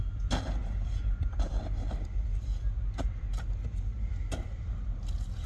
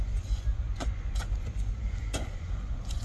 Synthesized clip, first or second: second